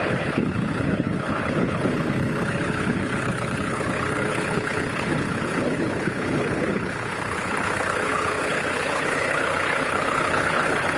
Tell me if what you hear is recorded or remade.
remade